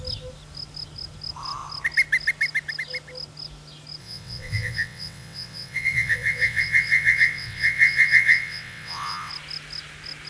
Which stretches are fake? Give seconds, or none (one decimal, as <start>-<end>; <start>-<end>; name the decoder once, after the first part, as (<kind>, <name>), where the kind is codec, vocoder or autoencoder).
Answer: 4.0-9.3 (vocoder, WaveNeXt)